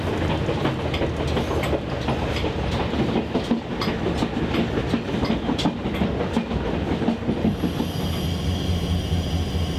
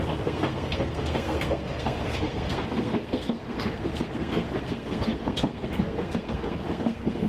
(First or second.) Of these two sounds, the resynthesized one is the second